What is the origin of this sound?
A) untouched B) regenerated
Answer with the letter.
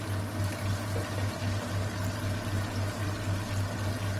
A